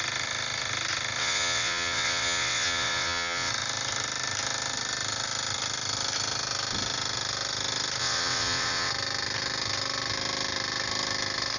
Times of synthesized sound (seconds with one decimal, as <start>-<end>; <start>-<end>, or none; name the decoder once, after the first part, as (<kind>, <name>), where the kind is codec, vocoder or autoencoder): 1.2-3.5 (vocoder, WaveNeXt); 8.0-8.9